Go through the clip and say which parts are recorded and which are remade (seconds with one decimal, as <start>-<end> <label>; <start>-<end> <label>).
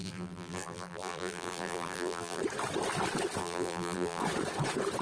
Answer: 0.0-2.4 remade; 2.4-3.4 recorded; 3.4-4.2 remade; 4.2-5.0 recorded